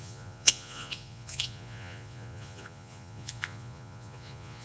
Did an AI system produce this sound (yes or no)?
yes